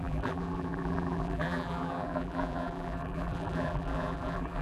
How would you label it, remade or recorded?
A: remade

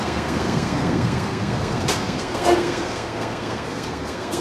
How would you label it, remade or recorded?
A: remade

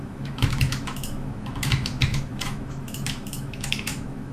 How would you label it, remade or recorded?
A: remade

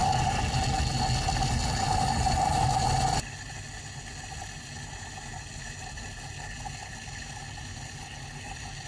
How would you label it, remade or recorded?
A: recorded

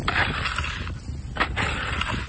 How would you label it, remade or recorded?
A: recorded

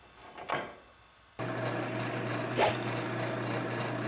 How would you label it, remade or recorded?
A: recorded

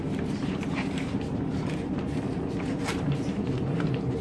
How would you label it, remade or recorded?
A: remade